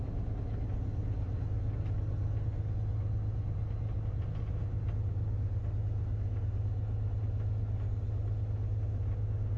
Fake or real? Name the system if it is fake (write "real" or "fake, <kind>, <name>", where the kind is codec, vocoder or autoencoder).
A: real